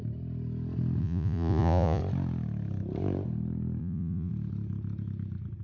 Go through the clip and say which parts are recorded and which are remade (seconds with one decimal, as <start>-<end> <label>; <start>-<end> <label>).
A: 0.0-1.0 recorded; 1.0-2.0 remade; 2.0-3.8 recorded; 3.8-4.3 remade; 4.3-5.6 recorded